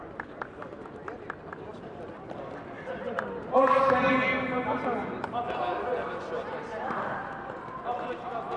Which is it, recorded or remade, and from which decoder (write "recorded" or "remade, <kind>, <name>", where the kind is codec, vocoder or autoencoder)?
recorded